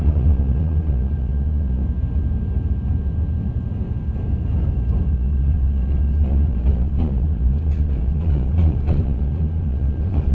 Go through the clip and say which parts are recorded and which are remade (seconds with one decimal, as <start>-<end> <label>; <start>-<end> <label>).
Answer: 0.0-1.8 remade; 1.8-5.1 recorded; 5.1-10.3 remade